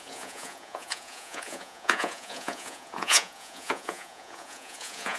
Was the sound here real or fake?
fake